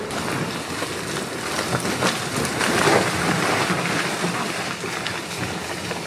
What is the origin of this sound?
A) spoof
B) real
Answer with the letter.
B